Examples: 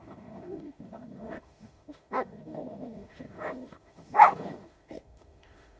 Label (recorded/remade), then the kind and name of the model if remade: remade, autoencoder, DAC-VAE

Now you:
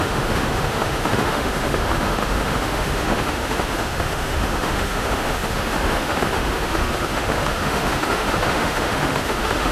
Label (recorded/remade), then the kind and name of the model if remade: remade, autoencoder, DAC-VAE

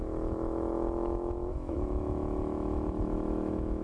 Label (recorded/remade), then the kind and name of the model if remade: remade, autoencoder, DAC-VAE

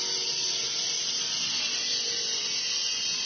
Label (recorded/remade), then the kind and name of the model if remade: recorded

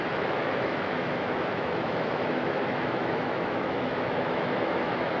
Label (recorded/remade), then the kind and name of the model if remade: remade, autoencoder, DAC-VAE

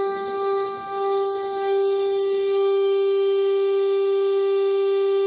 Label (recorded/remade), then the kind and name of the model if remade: remade, autoencoder, DAC-VAE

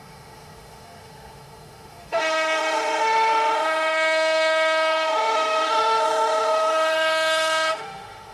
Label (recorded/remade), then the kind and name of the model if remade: remade, autoencoder, DAC-VAE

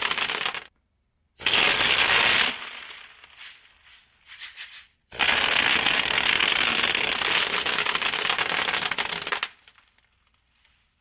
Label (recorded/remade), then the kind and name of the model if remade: recorded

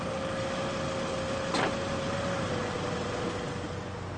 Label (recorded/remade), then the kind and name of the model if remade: recorded